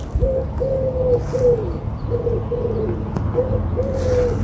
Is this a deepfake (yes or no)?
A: no